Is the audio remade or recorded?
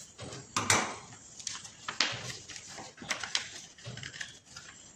recorded